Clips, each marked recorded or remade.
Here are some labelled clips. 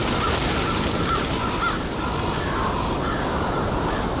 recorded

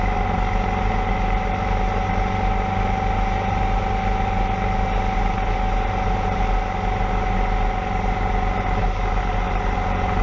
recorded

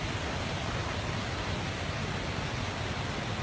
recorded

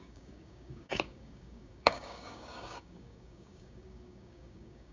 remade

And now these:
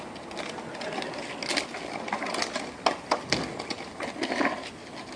recorded